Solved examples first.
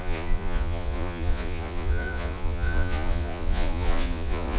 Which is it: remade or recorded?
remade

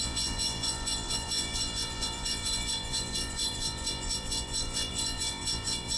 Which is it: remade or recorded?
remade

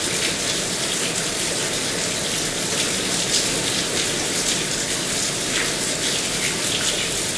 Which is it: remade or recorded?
recorded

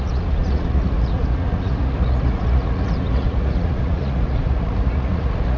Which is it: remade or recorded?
remade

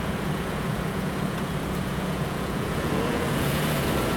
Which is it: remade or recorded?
remade